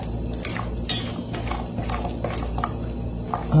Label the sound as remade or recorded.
recorded